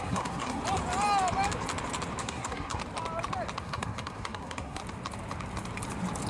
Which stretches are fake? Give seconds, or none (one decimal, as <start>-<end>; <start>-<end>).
0.0-0.6; 2.2-2.8; 3.6-4.8